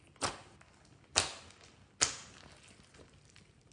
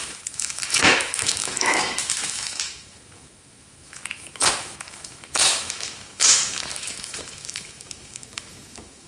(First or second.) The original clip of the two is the first